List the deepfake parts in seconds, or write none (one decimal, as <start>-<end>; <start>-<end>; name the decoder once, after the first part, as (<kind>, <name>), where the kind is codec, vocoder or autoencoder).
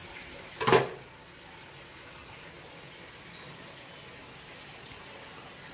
none